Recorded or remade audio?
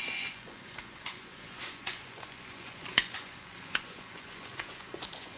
remade